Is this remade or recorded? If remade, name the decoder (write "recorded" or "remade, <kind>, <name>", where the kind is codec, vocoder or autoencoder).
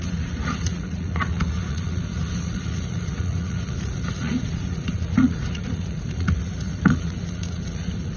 remade, vocoder, Vocos